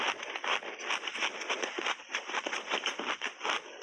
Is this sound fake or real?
real